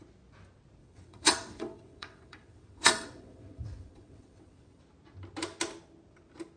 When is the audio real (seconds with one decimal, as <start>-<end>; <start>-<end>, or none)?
0.0-0.8; 4.8-6.6